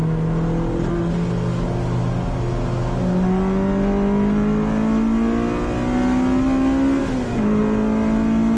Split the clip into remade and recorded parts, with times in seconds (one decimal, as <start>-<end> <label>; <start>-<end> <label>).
0.0-7.0 recorded; 7.0-7.6 remade; 7.6-8.6 recorded